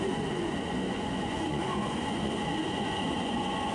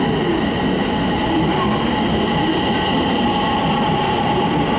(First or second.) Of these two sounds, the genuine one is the second